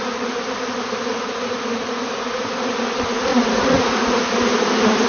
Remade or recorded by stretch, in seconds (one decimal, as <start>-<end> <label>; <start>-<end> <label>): 0.0-1.1 recorded; 1.1-2.7 remade; 2.7-3.3 recorded; 3.3-4.3 remade; 4.3-5.1 recorded